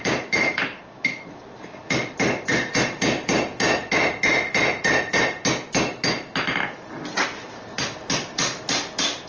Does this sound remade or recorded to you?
recorded